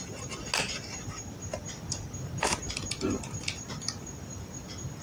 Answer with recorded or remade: recorded